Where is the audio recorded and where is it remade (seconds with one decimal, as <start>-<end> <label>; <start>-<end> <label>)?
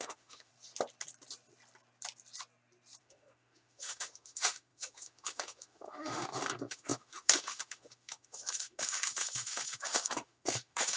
0.0-0.5 remade; 0.5-3.0 recorded; 3.0-11.0 remade